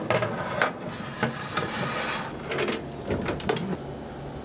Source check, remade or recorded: recorded